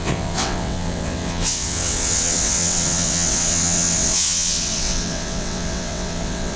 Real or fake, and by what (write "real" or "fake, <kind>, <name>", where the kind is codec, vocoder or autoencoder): fake, vocoder, WaveNeXt